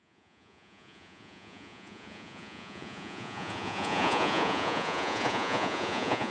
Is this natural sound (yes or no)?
no